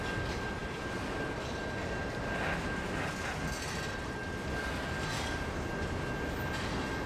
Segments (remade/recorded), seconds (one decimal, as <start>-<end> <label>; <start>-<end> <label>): 0.0-7.1 recorded